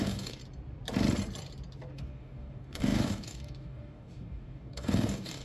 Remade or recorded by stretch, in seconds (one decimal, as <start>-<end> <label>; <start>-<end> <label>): 0.0-0.4 remade; 0.4-1.9 recorded; 1.9-5.4 remade